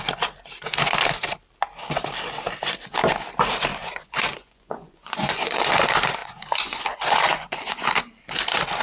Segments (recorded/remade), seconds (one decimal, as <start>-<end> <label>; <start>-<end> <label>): 0.0-3.7 recorded; 3.7-5.7 remade; 5.7-6.2 recorded; 6.2-7.8 remade; 7.8-8.8 recorded